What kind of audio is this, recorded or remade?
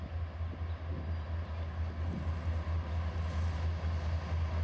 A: recorded